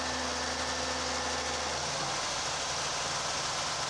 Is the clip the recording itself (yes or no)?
yes